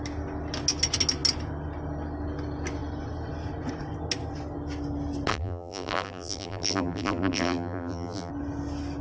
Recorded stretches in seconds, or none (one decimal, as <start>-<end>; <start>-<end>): 0.0-5.3; 8.3-9.0